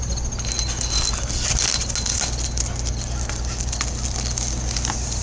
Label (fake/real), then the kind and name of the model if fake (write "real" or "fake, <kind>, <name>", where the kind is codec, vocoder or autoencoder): real